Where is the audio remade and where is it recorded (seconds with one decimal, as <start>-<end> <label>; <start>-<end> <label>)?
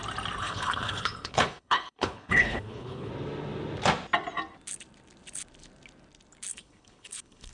0.0-0.4 recorded; 0.4-3.1 remade; 3.1-6.5 recorded; 6.5-7.5 remade